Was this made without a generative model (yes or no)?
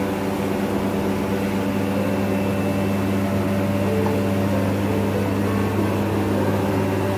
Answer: yes